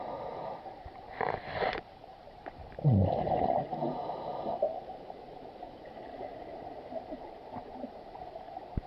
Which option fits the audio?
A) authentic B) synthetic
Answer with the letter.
B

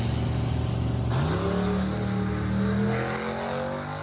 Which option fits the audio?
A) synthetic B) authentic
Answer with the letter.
B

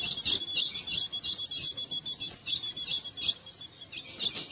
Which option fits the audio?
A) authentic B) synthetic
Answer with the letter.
A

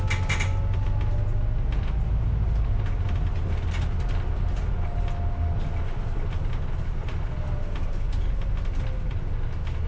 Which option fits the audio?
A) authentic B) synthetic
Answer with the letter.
A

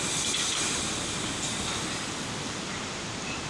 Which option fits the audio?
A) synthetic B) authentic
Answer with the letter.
B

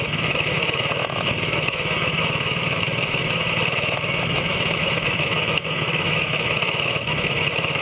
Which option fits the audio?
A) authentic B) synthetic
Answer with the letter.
B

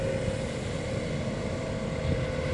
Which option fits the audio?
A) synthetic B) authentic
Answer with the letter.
B